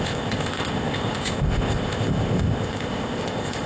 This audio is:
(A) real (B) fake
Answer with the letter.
B